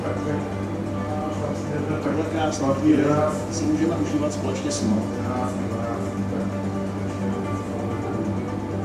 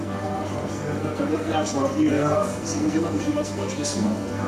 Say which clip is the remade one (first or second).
second